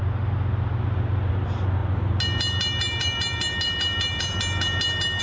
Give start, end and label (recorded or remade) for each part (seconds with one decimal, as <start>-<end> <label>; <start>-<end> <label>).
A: 0.0-5.2 recorded